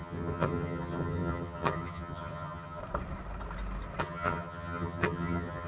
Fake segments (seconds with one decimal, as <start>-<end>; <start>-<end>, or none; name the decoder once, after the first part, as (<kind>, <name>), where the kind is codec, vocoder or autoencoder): 0.0-2.8 (vocoder, HiFi-GAN); 4.0-5.7